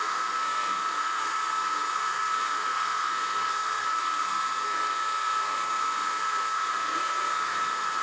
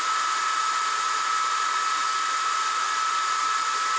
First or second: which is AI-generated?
first